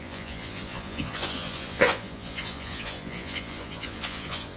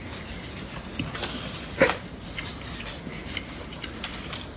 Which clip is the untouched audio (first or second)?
second